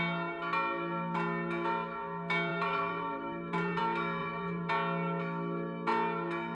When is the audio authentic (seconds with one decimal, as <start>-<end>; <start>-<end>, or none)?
0.0-2.5; 3.8-4.2; 4.7-6.5